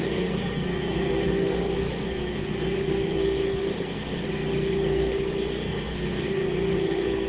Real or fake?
fake